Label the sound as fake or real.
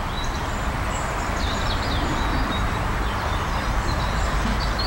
real